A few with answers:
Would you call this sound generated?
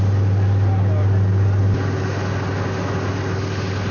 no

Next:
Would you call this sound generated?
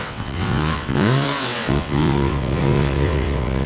yes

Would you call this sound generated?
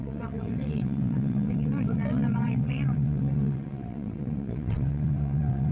yes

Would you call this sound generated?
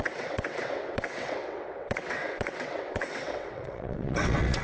yes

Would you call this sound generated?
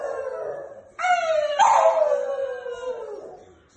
no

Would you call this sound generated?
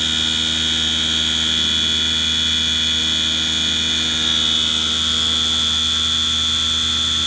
no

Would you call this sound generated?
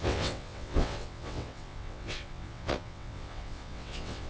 yes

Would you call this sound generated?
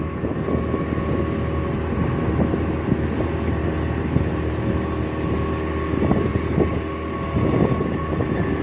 no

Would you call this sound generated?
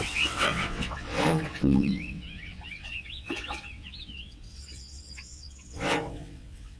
yes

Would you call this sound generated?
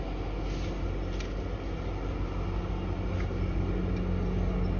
no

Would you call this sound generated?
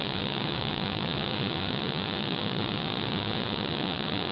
yes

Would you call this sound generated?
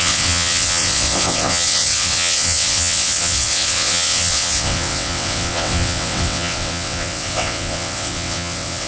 yes